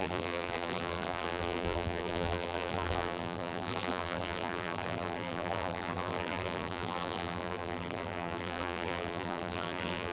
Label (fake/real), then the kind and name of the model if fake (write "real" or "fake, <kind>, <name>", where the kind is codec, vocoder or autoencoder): fake, vocoder, BigVGAN v2